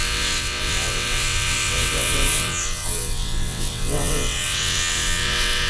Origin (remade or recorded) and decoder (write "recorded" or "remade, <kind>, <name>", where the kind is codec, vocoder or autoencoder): remade, vocoder, WaveNeXt